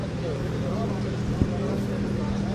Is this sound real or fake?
real